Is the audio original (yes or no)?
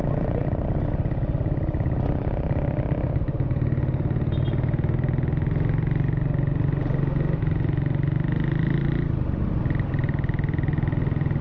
yes